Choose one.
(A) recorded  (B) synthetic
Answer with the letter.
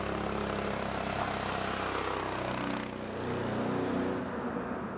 A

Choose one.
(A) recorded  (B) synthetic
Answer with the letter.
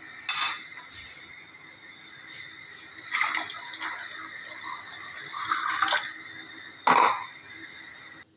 A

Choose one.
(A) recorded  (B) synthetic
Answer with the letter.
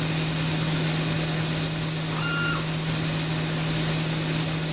A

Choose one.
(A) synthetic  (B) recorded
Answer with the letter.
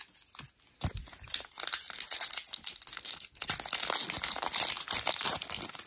B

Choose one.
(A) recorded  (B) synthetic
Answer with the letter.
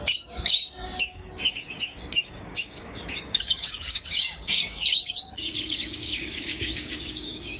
B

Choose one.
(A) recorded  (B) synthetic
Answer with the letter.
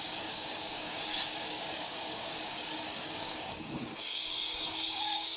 B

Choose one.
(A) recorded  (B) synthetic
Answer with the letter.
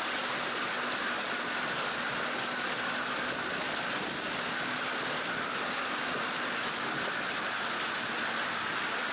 A